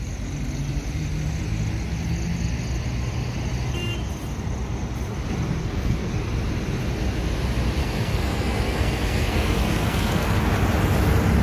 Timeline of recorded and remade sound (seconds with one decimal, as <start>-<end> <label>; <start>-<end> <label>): 0.0-5.6 recorded; 5.6-6.1 remade; 6.1-7.8 recorded; 7.8-10.5 remade; 10.5-11.4 recorded